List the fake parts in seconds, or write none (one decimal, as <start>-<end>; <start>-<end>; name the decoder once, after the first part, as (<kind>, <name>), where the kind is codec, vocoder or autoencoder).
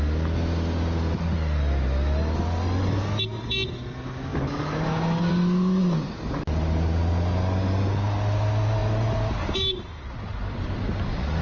none